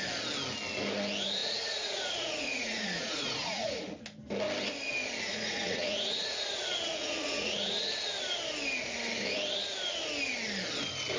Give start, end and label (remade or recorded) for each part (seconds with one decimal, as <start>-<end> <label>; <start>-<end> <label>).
0.0-1.4 recorded; 1.4-3.8 remade; 3.8-5.3 recorded; 5.3-7.8 remade; 7.8-11.2 recorded